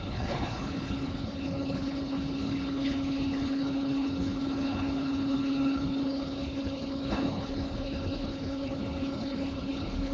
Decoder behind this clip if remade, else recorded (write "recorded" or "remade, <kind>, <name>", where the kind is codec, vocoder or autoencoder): remade, codec, HILCodec